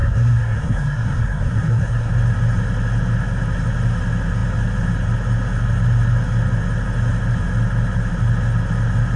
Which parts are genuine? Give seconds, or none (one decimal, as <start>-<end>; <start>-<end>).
2.1-9.2